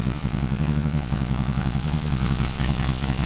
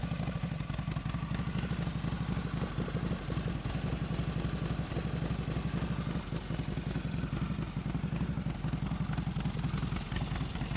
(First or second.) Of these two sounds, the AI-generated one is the first